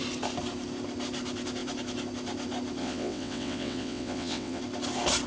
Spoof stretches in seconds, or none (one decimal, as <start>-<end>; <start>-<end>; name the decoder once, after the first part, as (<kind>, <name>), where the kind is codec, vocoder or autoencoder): 2.8-4.6 (vocoder, WaveNeXt)